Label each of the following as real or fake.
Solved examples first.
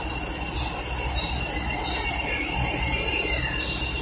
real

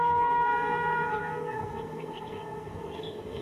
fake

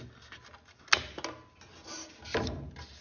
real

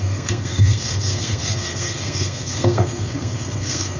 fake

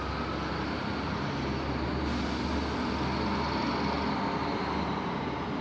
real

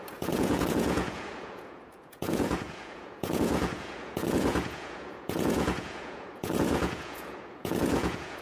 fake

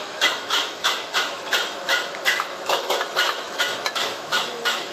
fake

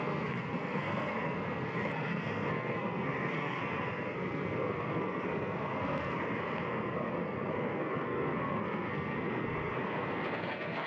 fake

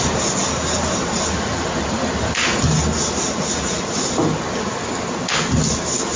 real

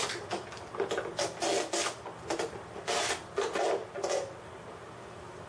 real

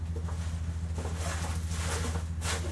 real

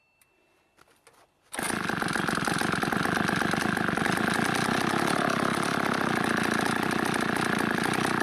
real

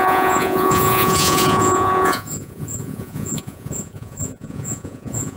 fake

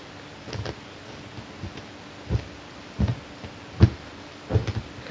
real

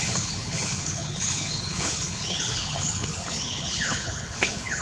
fake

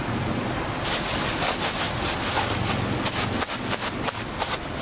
real